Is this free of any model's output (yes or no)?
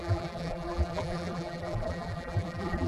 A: no